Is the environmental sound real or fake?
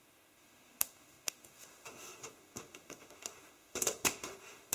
fake